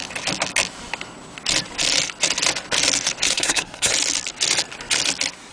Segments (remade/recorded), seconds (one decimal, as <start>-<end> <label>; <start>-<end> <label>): 0.0-3.3 recorded; 3.3-3.9 remade; 3.9-5.5 recorded